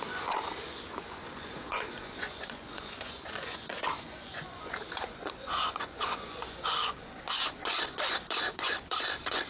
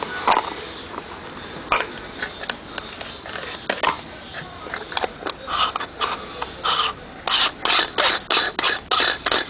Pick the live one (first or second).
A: second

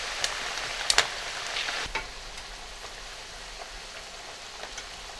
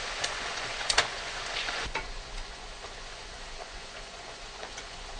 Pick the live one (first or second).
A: first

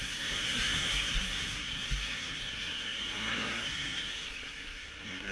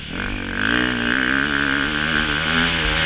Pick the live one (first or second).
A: second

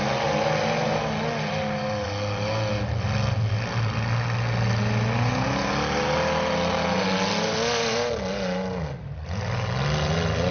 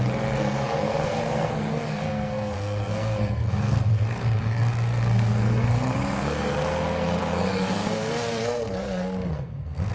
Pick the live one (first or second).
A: first